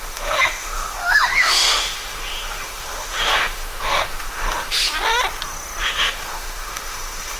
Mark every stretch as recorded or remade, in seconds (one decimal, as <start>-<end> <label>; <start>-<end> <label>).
0.0-4.9 remade; 4.9-5.8 recorded; 5.8-7.4 remade